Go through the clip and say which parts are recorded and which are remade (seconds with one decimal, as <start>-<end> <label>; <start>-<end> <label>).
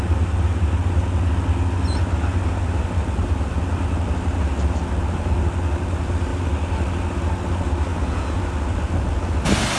0.0-7.9 recorded; 7.9-8.4 remade; 8.4-9.8 recorded